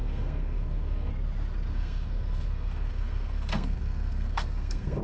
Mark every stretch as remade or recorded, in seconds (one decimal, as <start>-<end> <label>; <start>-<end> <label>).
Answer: 0.0-1.1 remade; 1.1-1.7 recorded; 1.7-5.0 remade